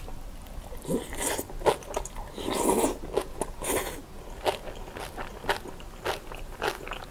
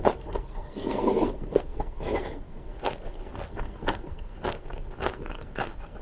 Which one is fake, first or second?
second